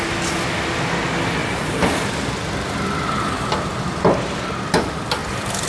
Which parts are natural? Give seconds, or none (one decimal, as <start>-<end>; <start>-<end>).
0.0-1.4; 4.5-5.2